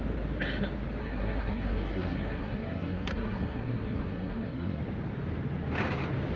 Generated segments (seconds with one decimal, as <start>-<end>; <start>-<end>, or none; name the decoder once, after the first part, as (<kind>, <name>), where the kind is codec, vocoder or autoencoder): 1.0-4.8 (codec, SNAC)